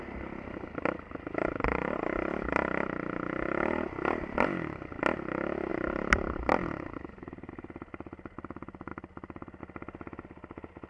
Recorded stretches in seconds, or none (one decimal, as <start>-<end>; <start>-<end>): 0.0-5.7; 7.5-10.9